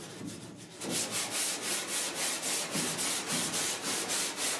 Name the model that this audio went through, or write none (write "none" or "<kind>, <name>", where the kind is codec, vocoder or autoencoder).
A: none